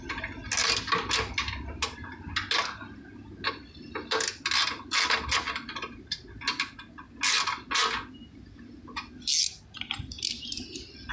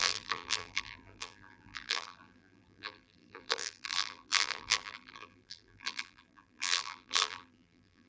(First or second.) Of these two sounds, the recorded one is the first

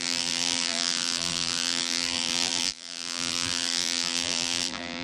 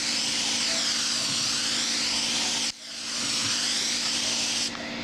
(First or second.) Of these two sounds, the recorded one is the second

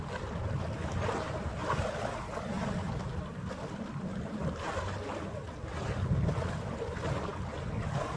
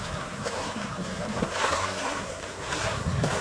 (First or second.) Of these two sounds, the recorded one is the first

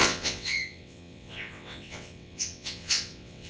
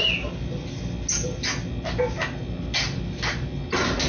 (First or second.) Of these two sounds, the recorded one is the second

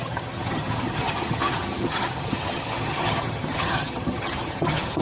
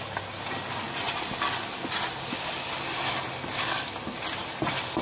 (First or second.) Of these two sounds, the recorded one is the second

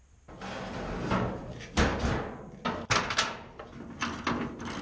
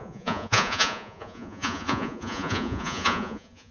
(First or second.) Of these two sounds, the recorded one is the first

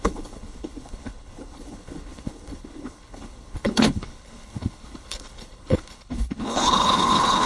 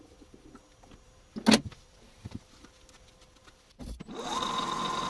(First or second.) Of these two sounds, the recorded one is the second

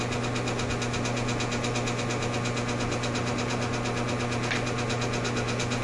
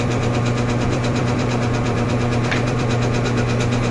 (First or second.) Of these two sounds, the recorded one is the first